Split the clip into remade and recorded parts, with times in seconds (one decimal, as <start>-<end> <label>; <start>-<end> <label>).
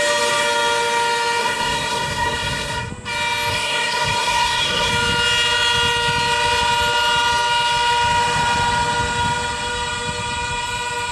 0.0-1.4 recorded; 1.4-2.9 remade; 2.9-3.5 recorded; 3.5-4.9 remade; 4.9-11.1 recorded